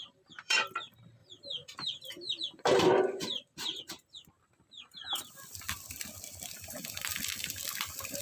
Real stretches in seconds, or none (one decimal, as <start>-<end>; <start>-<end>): 1.2-2.8